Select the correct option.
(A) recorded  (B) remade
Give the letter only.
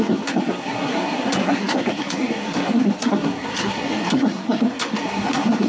B